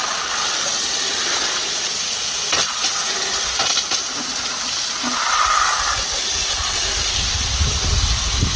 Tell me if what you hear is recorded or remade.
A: recorded